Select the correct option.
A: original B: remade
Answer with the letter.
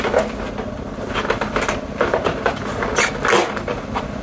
A